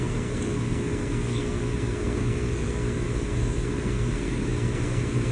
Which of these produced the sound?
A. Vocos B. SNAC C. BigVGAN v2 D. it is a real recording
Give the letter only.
B